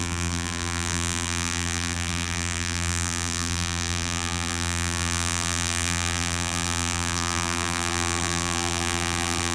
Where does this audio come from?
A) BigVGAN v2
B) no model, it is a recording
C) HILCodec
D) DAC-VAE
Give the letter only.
A